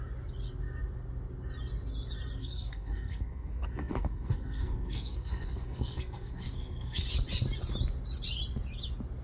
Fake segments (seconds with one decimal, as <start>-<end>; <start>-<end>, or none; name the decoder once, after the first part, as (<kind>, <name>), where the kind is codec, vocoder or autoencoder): 2.4-7.0 (codec, SNAC)